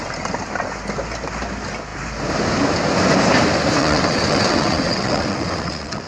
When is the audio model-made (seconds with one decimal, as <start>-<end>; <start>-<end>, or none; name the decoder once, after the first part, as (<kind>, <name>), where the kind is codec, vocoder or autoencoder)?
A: 3.8-6.1 (vocoder, WaveNeXt)